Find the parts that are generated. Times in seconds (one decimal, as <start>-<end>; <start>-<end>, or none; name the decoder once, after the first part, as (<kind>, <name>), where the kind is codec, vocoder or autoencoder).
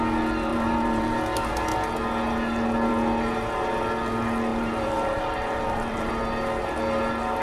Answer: 0.5-1.2 (vocoder, BigVGAN v2); 4.5-6.1